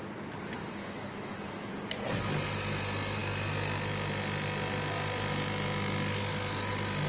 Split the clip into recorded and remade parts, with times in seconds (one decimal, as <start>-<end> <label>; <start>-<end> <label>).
0.0-0.6 recorded; 0.6-1.7 remade; 1.7-7.1 recorded